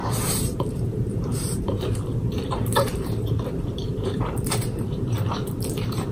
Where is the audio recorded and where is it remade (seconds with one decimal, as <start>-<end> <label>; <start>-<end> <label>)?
0.0-6.1 remade